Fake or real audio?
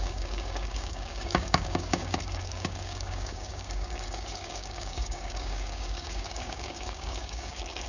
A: fake